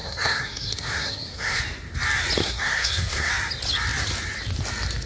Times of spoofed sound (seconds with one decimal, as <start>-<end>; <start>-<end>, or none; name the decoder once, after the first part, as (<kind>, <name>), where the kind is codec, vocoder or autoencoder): 0.0-1.6 (codec, SNAC); 2.4-3.3